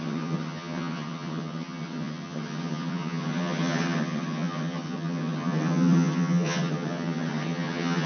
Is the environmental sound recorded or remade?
remade